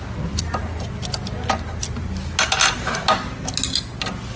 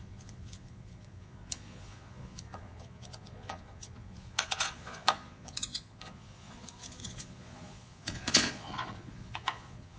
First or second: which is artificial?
second